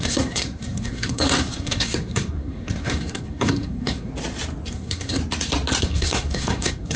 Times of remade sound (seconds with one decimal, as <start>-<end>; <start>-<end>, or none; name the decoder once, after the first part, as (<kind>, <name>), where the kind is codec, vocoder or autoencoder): 0.0-4.1 (codec, SNAC); 4.7-5.2; 5.8-7.0